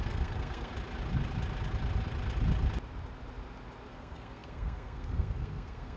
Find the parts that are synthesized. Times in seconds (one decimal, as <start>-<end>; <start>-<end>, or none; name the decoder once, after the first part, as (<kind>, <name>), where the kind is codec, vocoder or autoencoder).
0.0-0.7 (codec, SNAC); 3.9-6.0